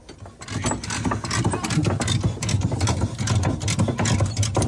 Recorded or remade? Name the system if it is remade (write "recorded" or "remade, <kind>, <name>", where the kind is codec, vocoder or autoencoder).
recorded